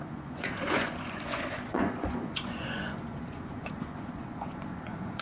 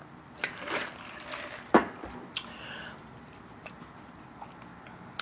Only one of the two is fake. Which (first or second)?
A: first